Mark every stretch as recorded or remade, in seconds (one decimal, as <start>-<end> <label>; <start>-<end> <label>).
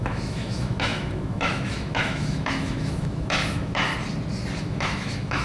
0.0-3.9 remade; 3.9-4.6 recorded; 4.6-5.4 remade